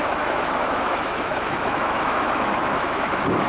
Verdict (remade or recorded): remade